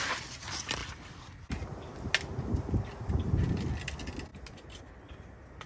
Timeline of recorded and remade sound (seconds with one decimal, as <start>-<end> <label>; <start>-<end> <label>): 0.0-5.7 recorded